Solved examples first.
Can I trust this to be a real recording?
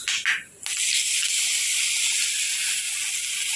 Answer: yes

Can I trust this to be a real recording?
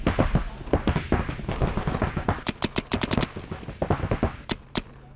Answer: yes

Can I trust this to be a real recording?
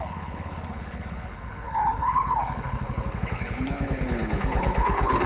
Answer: no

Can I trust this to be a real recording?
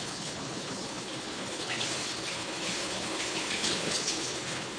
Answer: no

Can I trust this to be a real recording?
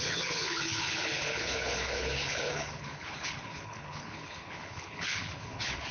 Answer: no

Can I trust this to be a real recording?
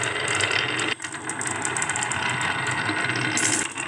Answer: yes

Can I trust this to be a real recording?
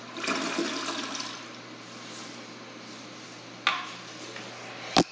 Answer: yes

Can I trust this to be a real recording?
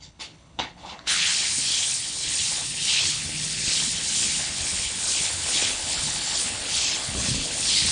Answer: no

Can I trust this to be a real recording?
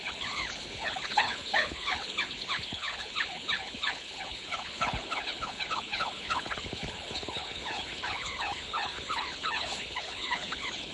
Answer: no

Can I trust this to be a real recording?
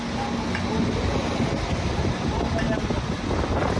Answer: yes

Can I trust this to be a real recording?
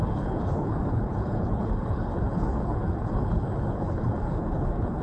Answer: no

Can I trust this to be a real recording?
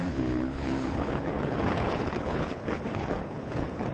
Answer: no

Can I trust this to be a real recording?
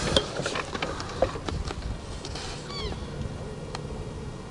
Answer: yes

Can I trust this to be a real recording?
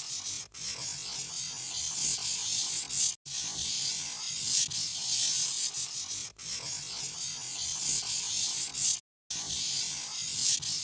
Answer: yes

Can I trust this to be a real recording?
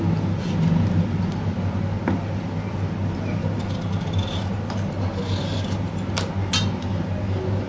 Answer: yes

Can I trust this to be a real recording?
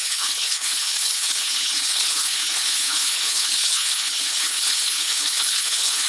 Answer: no